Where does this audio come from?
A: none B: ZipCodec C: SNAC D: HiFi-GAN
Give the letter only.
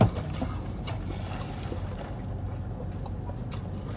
A